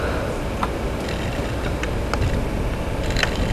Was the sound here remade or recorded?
recorded